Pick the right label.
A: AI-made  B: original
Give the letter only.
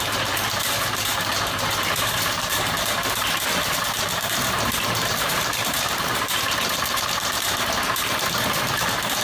A